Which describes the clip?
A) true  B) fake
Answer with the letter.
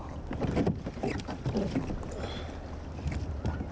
A